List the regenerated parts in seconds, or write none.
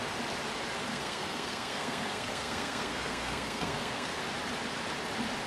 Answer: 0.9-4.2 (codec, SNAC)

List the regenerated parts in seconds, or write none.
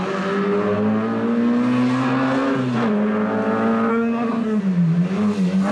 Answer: 3.9-4.6 (codec, SNAC)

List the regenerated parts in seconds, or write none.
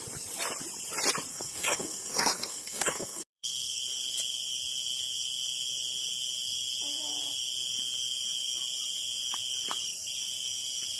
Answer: 1.3-3.8 (codec, SNAC)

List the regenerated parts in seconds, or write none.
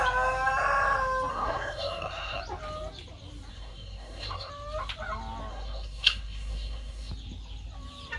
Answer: 1.3-2.4 (codec, SNAC); 3.5-4.5; 5.5-7.1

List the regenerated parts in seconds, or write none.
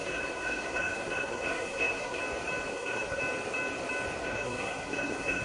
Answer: 0.0-2.2 (codec, SNAC); 2.7-3.2; 4.2-5.4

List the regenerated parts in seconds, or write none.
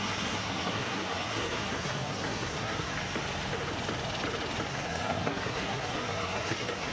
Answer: 0.0-2.9 (codec, SNAC); 4.7-6.9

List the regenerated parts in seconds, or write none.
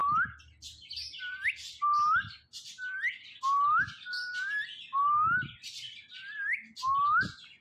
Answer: none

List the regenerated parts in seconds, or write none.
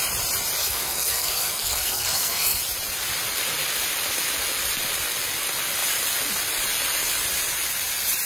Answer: 0.6-2.6 (codec, SNAC)